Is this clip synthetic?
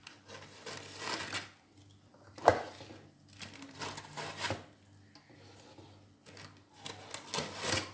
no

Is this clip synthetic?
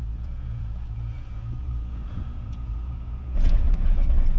yes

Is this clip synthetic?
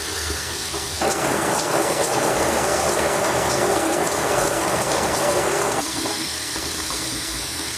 yes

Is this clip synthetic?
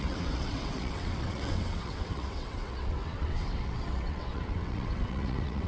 yes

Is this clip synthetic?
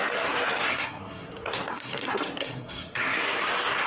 yes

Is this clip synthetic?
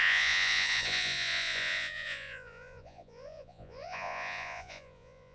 yes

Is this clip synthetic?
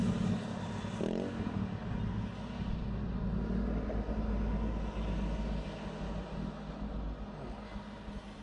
no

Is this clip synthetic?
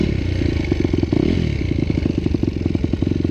no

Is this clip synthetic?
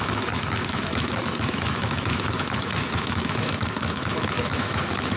yes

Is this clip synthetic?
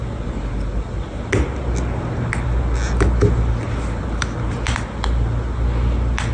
no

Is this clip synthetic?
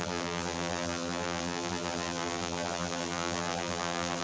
yes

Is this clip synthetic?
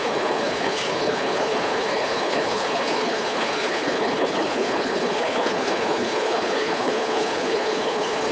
yes